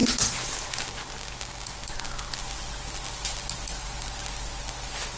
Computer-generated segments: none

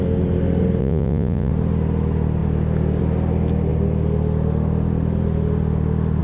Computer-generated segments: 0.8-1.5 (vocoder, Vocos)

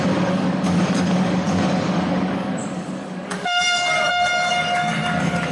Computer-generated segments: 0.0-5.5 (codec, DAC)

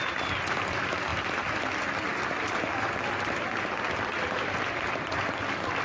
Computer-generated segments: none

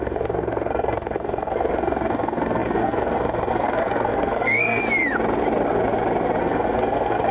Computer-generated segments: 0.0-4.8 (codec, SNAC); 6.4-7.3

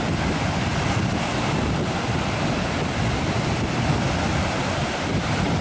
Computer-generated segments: none

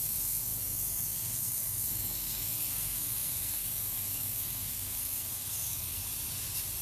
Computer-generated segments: 0.0-6.0 (codec, SNAC)